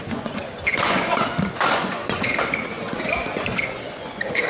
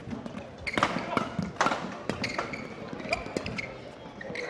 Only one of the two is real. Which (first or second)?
second